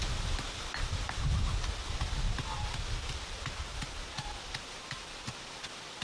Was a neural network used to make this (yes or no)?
no